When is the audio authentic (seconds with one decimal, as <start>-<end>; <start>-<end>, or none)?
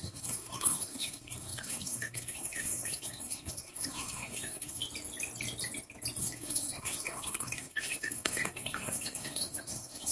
4.8-6.2